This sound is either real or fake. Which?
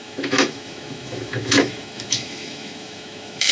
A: fake